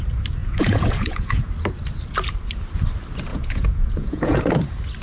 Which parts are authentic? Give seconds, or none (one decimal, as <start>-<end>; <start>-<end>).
0.0-0.4; 1.5-3.3; 4.4-5.0